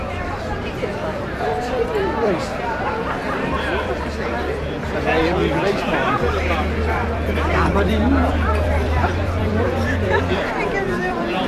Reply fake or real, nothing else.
fake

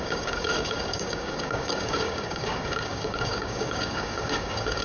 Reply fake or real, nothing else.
fake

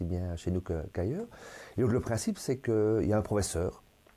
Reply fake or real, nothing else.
real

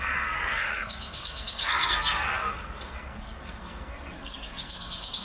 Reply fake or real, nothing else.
fake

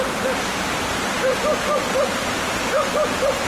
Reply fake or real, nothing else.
real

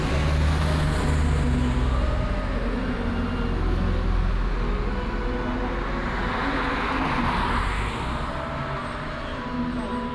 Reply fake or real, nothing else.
real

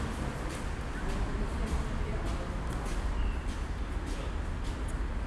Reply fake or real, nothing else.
real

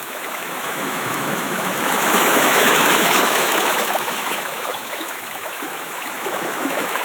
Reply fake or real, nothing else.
fake